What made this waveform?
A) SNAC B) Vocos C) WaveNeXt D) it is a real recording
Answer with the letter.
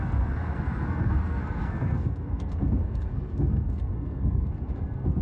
A